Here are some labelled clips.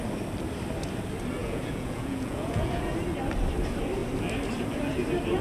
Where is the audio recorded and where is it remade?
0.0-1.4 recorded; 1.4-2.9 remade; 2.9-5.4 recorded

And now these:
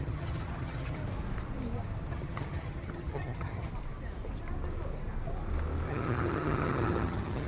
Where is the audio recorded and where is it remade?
0.0-1.0 remade; 1.0-2.1 recorded; 2.1-3.7 remade; 3.7-5.9 recorded; 5.9-7.5 remade